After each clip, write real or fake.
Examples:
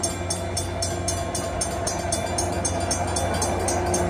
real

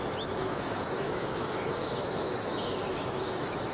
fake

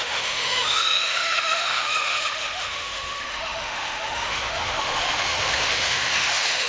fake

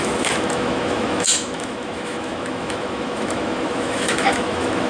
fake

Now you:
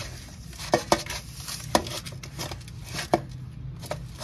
real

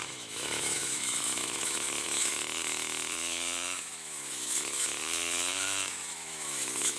fake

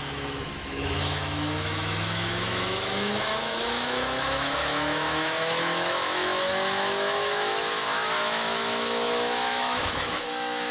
fake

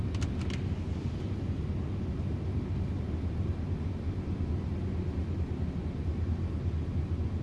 real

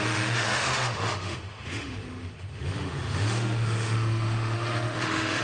fake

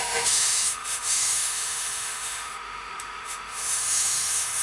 fake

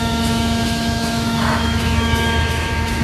fake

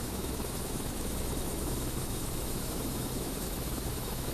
fake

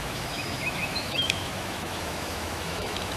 fake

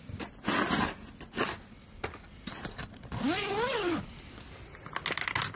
real